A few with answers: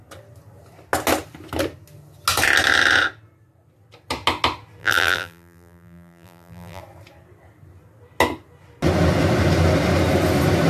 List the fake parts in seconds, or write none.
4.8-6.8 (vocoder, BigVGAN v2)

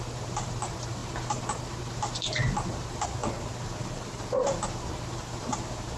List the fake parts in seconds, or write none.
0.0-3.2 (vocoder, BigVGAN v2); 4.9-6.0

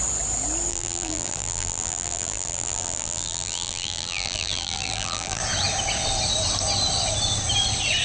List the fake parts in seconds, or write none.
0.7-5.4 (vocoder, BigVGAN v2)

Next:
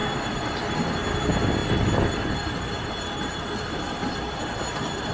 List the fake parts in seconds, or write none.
1.6-4.4 (vocoder, BigVGAN v2)